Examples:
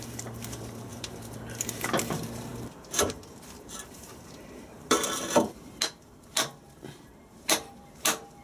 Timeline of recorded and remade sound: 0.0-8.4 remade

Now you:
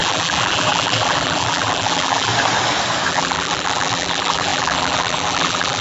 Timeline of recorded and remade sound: 0.0-2.3 remade; 2.3-3.1 recorded; 3.1-5.8 remade

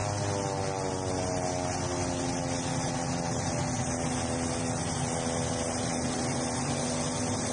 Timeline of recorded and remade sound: 0.0-7.5 recorded

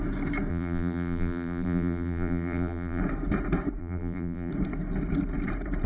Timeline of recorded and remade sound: 0.0-0.5 recorded; 0.5-3.0 remade; 3.0-3.8 recorded; 3.8-4.5 remade; 4.5-5.9 recorded

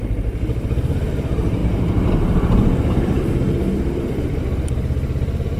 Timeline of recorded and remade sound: 0.0-1.6 recorded; 1.6-4.4 remade; 4.4-5.6 recorded